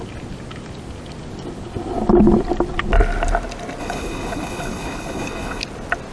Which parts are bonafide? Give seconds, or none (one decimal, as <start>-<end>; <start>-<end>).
0.0-3.8; 5.6-6.1